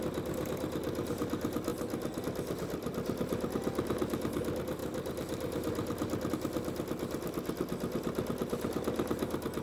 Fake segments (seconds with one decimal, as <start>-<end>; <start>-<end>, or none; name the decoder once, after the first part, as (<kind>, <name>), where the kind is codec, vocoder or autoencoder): none